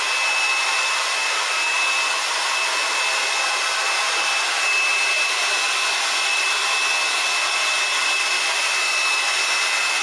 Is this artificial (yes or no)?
no